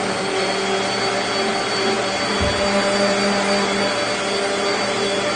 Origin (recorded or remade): recorded